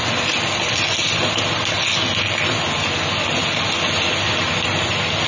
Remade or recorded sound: recorded